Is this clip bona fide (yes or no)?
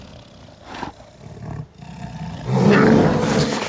yes